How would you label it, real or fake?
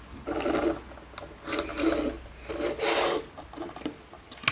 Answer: real